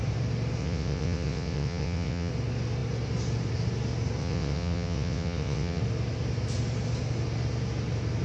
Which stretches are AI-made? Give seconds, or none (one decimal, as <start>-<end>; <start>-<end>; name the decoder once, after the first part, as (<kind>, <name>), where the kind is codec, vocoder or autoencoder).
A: 0.6-2.3 (vocoder, WaveNeXt); 4.2-5.8